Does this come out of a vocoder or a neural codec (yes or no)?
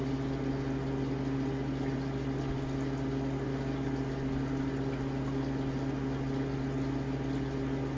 no